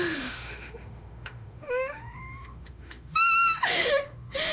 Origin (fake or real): fake